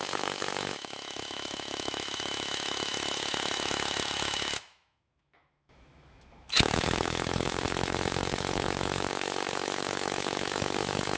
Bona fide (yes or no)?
no